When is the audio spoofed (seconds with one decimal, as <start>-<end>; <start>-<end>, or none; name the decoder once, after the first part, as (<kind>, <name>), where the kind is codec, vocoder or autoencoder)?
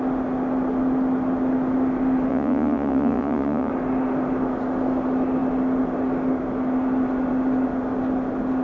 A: 2.3-3.7 (vocoder, Vocos)